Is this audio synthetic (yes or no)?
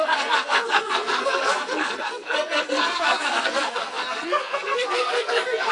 yes